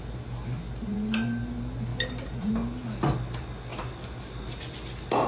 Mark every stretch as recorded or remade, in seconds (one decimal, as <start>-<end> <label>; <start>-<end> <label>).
0.0-0.9 recorded; 0.9-1.4 remade; 1.4-1.9 recorded; 1.9-2.5 remade; 2.5-5.3 recorded